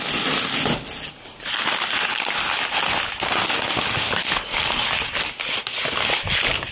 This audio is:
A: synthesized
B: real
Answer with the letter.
B